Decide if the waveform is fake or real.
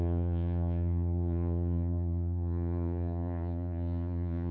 fake